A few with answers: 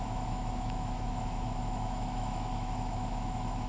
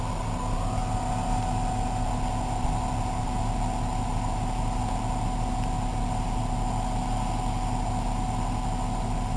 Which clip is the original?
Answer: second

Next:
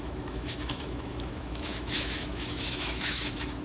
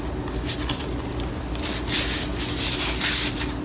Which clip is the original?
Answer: second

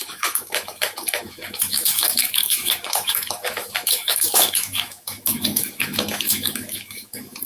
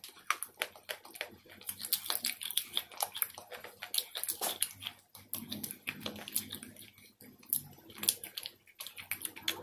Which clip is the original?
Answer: second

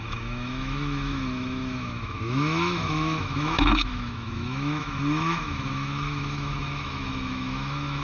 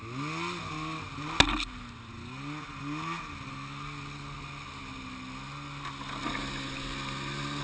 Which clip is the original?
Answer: second